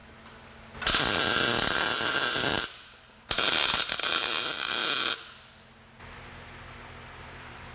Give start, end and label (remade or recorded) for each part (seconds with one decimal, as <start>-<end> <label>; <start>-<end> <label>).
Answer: 0.0-2.1 recorded; 2.1-4.8 remade; 4.8-7.2 recorded; 7.2-7.7 remade